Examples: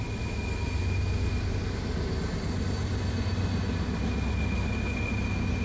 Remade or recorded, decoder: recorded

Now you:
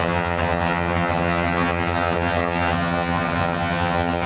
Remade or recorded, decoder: remade, vocoder, HiFi-GAN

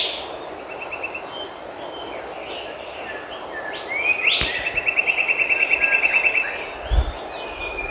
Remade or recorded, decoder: recorded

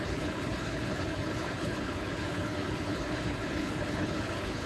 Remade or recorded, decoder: remade, codec, HILCodec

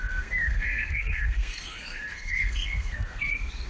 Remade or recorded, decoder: remade, codec, SNAC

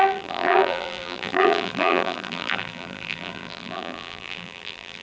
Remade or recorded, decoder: remade, vocoder, BigVGAN v2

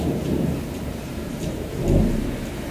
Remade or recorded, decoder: remade, vocoder, BigVGAN v2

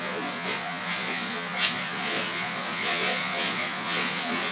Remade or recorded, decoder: remade, vocoder, Vocos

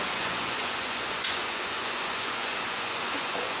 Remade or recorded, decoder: remade, vocoder, Vocos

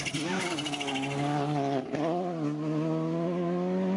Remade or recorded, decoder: recorded